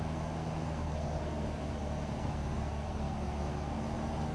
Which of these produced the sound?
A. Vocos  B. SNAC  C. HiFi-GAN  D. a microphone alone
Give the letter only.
B